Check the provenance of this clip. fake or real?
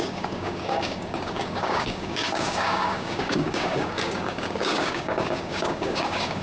fake